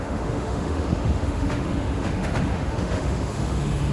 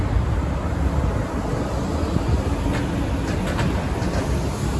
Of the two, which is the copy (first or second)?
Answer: first